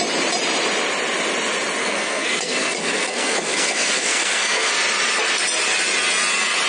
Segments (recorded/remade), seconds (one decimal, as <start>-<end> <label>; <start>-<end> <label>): 0.0-1.8 recorded; 1.8-4.7 remade; 4.7-6.7 recorded